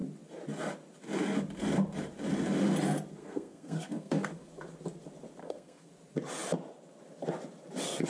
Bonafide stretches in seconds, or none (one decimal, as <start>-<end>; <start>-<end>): 0.0-3.2; 4.5-5.4; 5.9-8.1